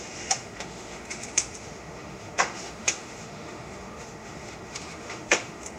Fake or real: fake